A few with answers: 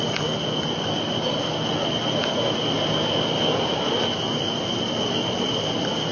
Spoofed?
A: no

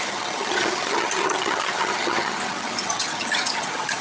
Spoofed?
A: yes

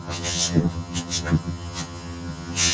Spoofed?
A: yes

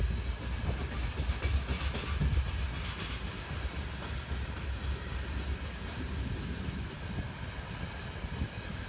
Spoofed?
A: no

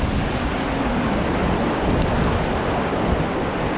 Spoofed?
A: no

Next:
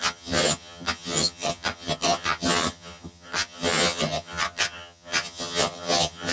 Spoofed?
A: yes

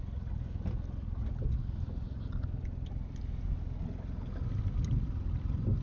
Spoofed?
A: no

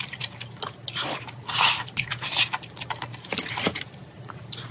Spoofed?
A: no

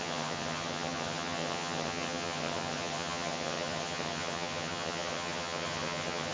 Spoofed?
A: yes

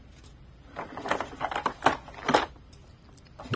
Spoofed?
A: no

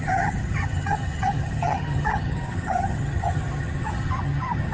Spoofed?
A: yes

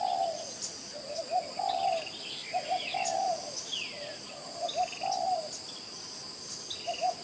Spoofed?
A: no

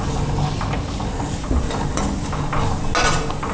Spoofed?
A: no